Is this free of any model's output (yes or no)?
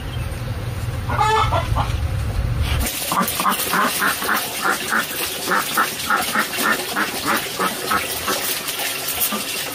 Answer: yes